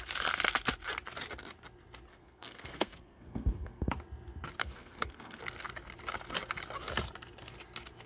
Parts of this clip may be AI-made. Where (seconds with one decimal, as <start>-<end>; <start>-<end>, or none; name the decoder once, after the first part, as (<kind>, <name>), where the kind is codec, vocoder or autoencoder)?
2.1-3.9 (codec, SNAC); 4.6-5.4